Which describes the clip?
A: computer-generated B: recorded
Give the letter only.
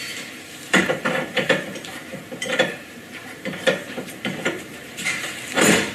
A